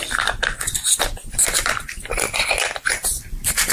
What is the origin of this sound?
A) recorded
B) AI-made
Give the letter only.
B